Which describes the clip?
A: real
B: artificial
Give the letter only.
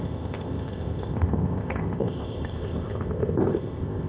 B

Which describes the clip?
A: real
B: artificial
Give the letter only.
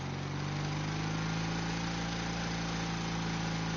A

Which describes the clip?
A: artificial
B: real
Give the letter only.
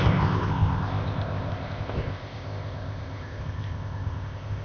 A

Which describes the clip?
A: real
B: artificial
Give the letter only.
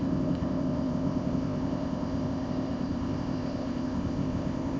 B